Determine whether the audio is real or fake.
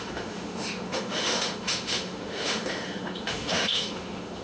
fake